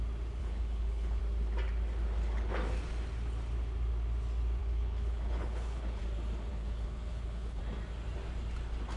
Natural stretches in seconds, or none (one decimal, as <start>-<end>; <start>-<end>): 0.0-0.4; 1.2-4.6; 6.0-6.5; 7.6-9.0